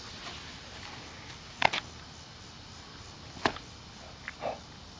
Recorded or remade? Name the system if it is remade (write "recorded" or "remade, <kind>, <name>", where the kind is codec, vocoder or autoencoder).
recorded